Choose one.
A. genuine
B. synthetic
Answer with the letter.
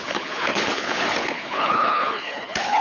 B